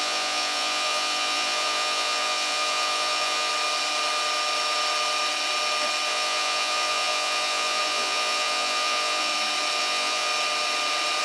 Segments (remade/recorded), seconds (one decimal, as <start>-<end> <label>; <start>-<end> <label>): 0.0-3.5 remade; 3.5-6.1 recorded; 6.1-9.3 remade; 9.3-9.8 recorded; 9.8-10.3 remade; 10.3-11.2 recorded